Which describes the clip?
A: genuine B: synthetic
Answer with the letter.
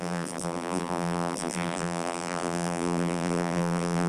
B